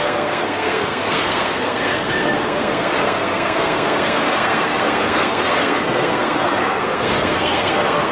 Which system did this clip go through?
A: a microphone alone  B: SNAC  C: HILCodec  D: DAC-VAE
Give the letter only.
B